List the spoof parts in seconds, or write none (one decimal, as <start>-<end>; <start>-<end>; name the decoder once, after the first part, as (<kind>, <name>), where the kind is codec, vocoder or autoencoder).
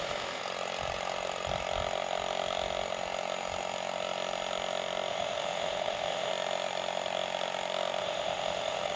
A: 0.0-0.4 (autoencoder, DAC-VAE); 5.1-6.3; 8.0-9.0